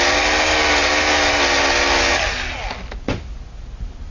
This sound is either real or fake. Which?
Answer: real